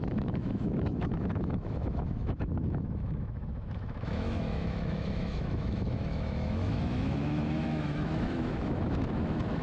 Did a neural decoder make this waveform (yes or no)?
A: yes